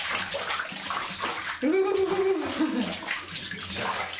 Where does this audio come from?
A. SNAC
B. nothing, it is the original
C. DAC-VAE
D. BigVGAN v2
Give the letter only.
B